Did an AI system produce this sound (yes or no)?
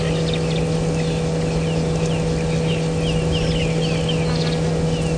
no